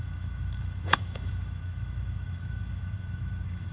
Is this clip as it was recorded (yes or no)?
no